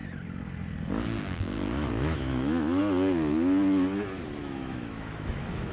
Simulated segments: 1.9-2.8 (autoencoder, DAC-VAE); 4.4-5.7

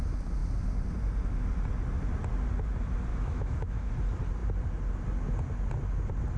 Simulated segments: 3.1-3.9 (autoencoder, DAC-VAE)

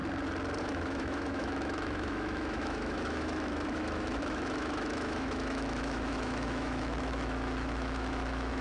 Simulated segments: 0.6-8.6 (autoencoder, DAC-VAE)